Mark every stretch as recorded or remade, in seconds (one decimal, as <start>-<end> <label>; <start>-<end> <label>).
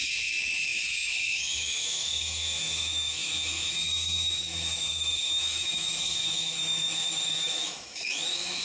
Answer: 0.0-8.6 remade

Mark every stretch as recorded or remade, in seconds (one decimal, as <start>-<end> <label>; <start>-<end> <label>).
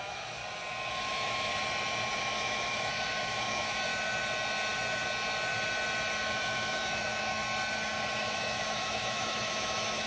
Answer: 0.0-0.4 remade; 0.4-0.9 recorded; 0.9-1.5 remade; 1.5-2.2 recorded; 2.2-3.9 remade; 3.9-6.2 recorded; 6.2-7.4 remade; 7.4-8.2 recorded; 8.2-10.1 remade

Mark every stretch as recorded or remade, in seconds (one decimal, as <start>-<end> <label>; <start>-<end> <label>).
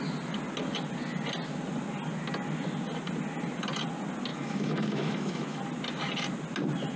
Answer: 0.0-4.3 recorded; 4.3-5.6 remade; 5.6-7.0 recorded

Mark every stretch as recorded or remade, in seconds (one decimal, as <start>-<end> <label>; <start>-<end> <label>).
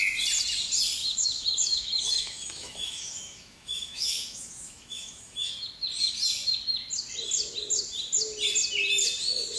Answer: 0.0-1.0 recorded; 1.0-5.5 remade; 5.5-9.6 recorded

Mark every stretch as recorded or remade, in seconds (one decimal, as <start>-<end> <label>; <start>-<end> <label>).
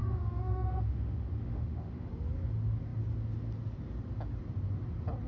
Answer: 0.0-2.1 remade; 2.1-5.3 recorded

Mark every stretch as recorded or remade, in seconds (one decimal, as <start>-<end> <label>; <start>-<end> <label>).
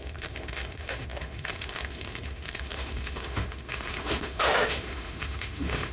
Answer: 0.0-5.9 remade